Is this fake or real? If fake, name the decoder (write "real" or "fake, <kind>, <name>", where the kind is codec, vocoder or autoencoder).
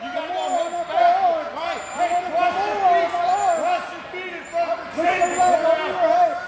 real